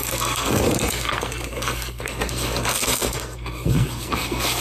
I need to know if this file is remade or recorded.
remade